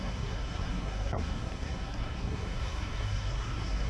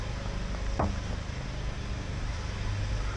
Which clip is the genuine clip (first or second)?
second